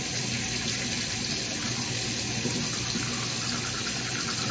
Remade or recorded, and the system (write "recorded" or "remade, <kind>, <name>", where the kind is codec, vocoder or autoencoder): recorded